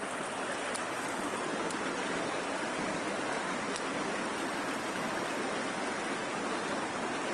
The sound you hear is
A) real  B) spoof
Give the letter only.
A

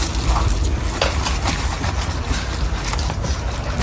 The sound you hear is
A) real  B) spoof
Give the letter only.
A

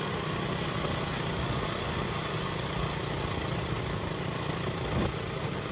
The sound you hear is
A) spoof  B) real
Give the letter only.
B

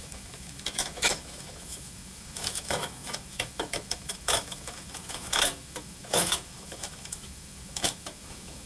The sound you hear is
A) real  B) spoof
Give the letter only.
B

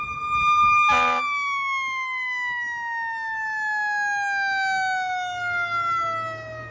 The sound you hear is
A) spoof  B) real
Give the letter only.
B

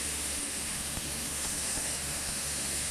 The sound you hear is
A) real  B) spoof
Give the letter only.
B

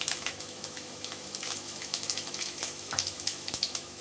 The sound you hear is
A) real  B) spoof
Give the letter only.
B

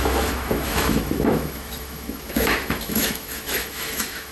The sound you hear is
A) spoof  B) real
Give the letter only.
A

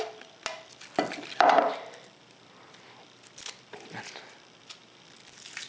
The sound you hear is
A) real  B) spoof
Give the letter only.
A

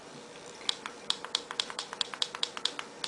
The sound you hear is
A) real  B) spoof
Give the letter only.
A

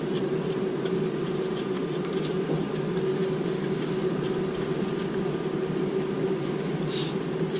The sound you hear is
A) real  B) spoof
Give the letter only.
A